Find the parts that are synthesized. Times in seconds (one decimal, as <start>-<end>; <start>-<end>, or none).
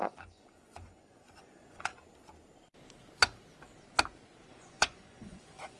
0.0-1.9; 4.5-5.8